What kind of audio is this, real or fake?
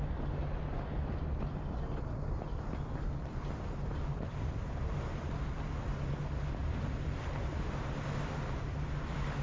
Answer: real